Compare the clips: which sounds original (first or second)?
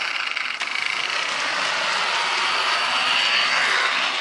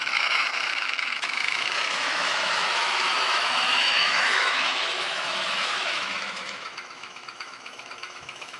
first